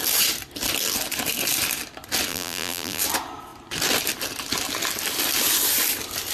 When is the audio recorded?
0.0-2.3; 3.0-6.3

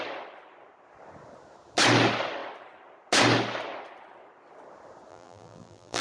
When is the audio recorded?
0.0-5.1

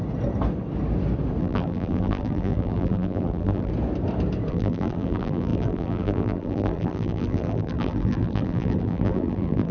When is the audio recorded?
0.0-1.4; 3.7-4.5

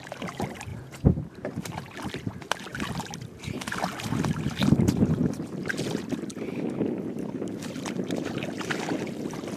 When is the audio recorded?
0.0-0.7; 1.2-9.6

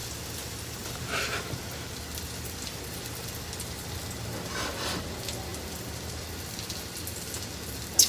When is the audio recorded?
0.0-8.1